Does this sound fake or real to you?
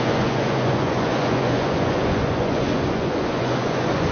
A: fake